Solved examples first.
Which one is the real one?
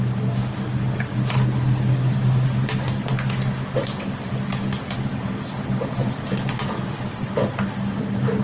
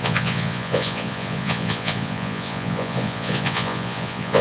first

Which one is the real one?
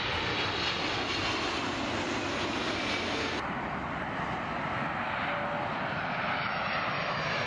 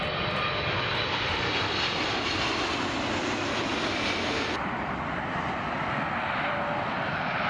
first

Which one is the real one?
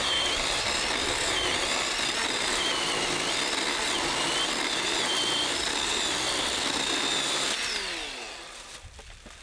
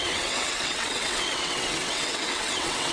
first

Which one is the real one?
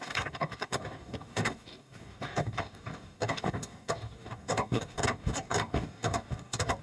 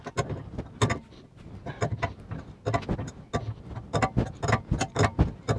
second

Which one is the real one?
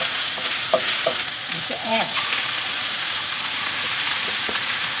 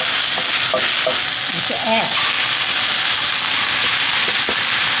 second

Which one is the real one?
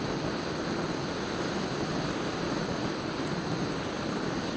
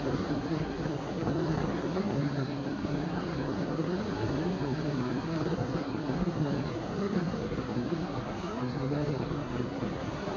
first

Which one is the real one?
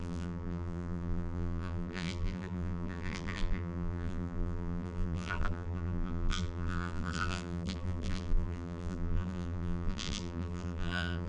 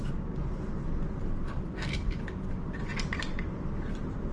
second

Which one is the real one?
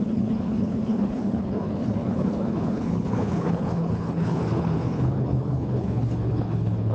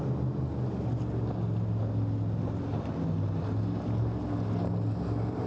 second